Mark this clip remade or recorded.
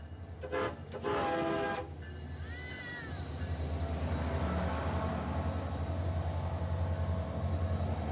recorded